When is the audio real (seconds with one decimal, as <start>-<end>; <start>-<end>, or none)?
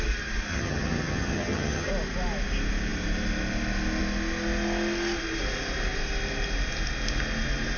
0.0-0.5; 1.9-7.8